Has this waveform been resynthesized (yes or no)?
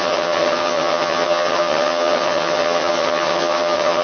yes